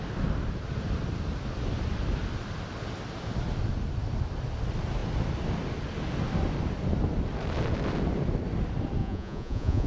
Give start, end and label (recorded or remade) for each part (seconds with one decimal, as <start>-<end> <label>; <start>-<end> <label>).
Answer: 0.0-9.0 recorded; 9.0-9.9 remade